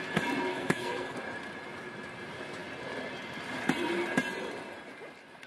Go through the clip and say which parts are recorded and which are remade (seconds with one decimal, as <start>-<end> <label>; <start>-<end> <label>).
0.0-0.5 recorded; 0.5-1.2 remade; 1.2-5.5 recorded